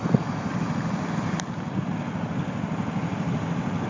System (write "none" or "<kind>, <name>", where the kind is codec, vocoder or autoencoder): none